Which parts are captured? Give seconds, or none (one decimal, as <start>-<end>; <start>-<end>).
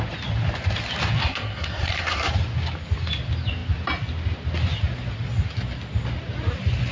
0.0-1.2; 2.3-6.9